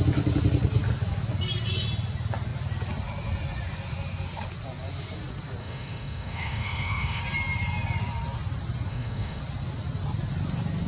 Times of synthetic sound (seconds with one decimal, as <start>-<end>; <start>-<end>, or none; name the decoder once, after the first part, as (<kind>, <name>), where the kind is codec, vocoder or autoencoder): 5.6-7.2 (autoencoder, DAC-VAE); 8.9-9.4